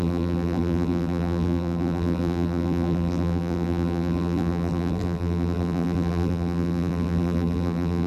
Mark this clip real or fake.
fake